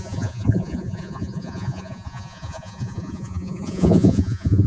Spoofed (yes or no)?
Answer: yes